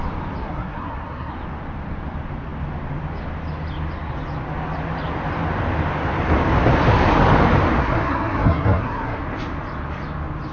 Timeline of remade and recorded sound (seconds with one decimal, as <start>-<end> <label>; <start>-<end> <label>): 0.0-0.4 recorded; 0.4-1.3 remade; 1.3-7.8 recorded; 7.8-9.2 remade; 9.2-10.5 recorded